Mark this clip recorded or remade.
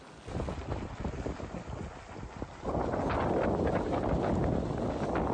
recorded